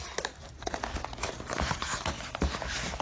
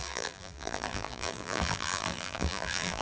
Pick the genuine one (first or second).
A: first